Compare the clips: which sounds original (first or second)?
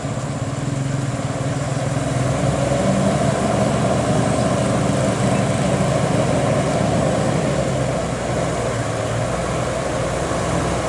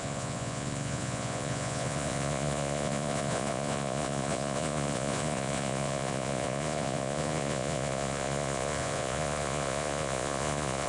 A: first